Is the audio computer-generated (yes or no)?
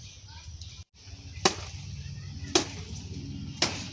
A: no